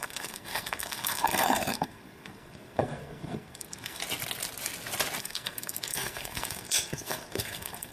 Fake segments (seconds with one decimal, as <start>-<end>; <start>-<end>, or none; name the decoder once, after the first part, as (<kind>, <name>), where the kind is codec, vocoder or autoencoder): 0.0-4.0 (codec, SNAC); 5.2-7.9